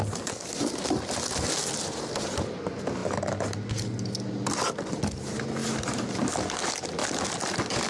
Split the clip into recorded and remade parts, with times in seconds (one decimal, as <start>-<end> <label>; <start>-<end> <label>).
0.0-7.9 recorded